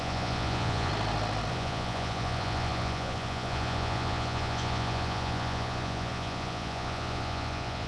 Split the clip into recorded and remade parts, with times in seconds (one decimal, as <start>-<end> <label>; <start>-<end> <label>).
0.0-0.9 remade; 0.9-1.5 recorded; 1.5-7.9 remade